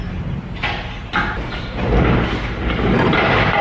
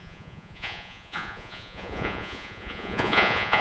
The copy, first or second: second